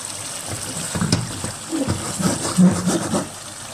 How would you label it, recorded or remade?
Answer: recorded